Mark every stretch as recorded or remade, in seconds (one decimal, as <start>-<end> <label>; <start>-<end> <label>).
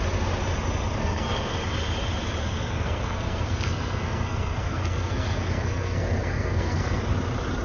0.0-1.0 recorded; 1.0-1.5 remade; 1.5-2.4 recorded; 2.4-7.0 remade; 7.0-7.6 recorded